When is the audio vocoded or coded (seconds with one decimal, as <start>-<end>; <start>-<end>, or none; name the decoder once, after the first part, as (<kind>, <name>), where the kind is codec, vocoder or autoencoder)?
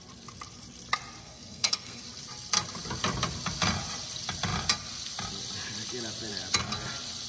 1.2-2.0 (codec, SNAC)